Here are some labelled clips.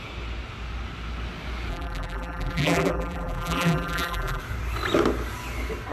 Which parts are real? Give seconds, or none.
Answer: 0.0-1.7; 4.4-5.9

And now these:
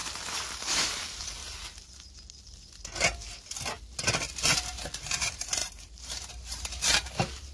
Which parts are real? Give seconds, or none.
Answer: 0.0-0.5; 1.4-4.3

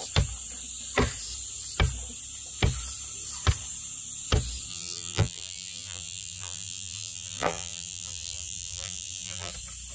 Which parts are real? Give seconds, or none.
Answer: 0.0-4.7; 9.5-9.9

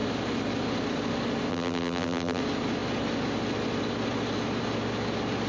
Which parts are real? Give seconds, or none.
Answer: 0.0-1.5; 2.4-5.5